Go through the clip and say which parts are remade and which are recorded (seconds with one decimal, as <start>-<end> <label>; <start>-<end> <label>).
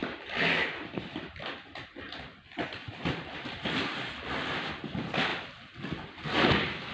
0.0-1.2 remade; 1.2-2.8 recorded; 2.8-4.7 remade; 4.7-6.9 recorded